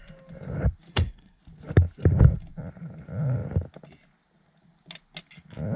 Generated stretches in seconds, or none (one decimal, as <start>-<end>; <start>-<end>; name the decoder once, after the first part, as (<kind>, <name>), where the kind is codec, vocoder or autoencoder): 0.9-1.4 (codec, SNAC)